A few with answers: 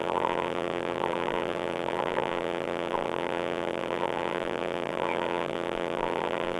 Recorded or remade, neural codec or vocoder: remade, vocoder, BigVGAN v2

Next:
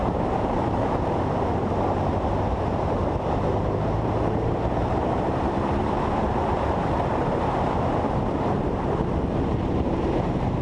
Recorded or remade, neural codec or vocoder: remade, vocoder, BigVGAN v2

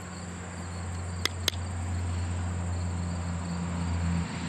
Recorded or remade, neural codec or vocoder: recorded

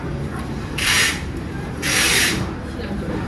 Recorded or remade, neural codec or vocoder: remade, vocoder, BigVGAN v2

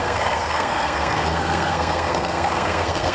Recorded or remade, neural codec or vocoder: remade, codec, SNAC